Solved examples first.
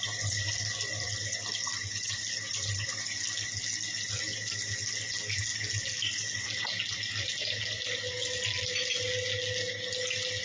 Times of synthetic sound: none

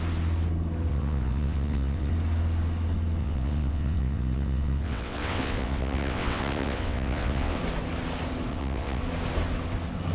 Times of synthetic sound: 0.9-2.1; 3.2-7.6; 8.5-9.0